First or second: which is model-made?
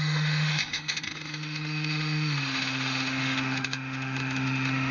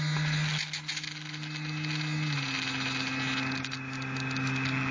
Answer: first